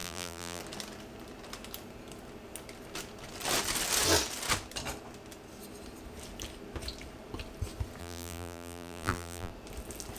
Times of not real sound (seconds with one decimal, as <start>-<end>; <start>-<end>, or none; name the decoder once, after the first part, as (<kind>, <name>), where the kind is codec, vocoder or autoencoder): 0.0-0.6 (vocoder, BigVGAN v2); 8.0-9.5